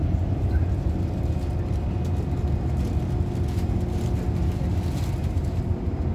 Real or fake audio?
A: real